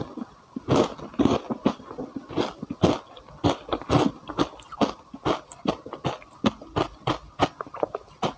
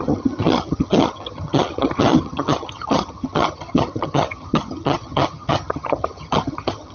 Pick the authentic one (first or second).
first